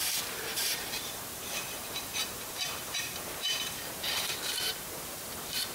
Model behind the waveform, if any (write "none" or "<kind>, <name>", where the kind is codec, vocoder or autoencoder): vocoder, BigVGAN v2